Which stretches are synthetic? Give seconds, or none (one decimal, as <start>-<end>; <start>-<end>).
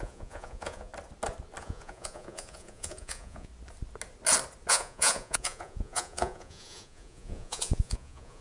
0.0-0.9; 1.6-3.5; 4.7-8.4